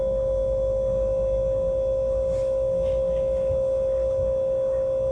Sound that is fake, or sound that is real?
real